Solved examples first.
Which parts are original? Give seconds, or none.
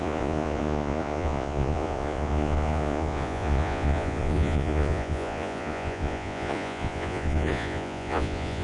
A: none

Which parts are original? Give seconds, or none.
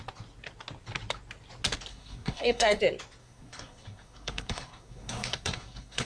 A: 0.0-1.9; 2.8-3.2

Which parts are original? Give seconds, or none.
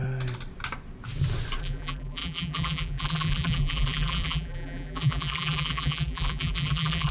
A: 0.0-1.6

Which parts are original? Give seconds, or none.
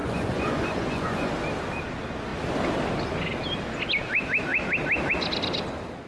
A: 1.3-6.1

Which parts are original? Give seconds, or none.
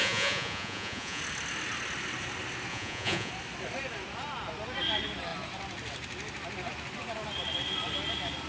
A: 1.2-2.7; 3.3-8.5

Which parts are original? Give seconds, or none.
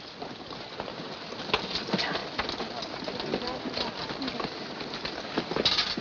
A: 0.0-6.0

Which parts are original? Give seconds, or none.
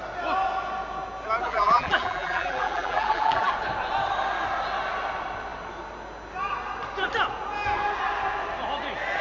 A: 0.0-1.5; 3.5-9.2